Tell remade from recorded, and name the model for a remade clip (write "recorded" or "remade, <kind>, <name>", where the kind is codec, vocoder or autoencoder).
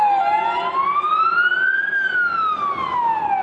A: recorded